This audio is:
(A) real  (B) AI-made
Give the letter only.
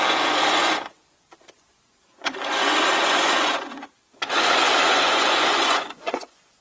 B